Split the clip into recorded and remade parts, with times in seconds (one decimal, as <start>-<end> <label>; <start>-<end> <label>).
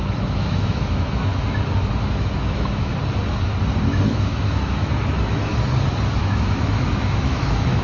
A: 0.0-1.3 remade; 1.3-1.9 recorded; 1.9-2.9 remade; 2.9-4.1 recorded; 4.1-5.5 remade; 5.5-6.2 recorded; 6.2-7.8 remade